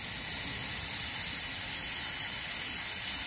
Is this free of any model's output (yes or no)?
yes